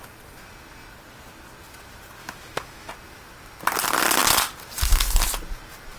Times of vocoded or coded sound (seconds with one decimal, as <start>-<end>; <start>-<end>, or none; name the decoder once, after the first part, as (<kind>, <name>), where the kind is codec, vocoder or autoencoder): 2.2-2.9 (autoencoder, DAC-VAE)